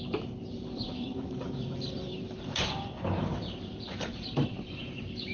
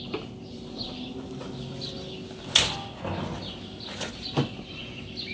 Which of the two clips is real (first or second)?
second